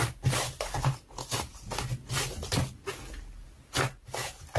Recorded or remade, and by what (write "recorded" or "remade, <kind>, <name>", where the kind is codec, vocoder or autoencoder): recorded